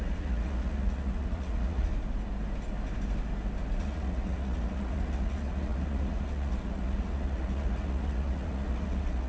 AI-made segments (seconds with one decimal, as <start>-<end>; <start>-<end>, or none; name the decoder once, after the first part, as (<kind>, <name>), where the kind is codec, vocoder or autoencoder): 0.0-1.9 (vocoder, Vocos); 3.8-9.3

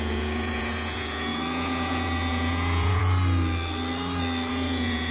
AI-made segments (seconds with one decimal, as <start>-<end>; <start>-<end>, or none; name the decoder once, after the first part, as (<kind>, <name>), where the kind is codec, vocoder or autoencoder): 0.0-3.0 (vocoder, Vocos); 4.5-5.1

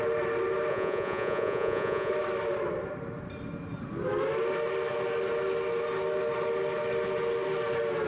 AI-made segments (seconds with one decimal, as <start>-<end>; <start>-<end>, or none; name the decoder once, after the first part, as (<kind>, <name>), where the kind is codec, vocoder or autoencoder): 0.7-2.1 (vocoder, Vocos)